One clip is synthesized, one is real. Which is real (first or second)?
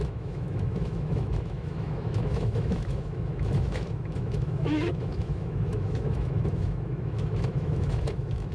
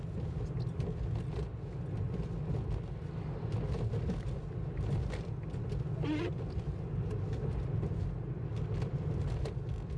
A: second